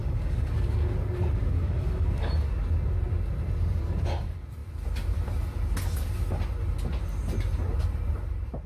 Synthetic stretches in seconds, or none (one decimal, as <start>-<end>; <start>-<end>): 0.0-0.9; 1.4-2.3